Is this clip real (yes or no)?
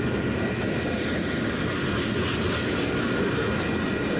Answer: yes